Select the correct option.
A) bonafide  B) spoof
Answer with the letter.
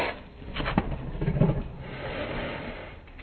A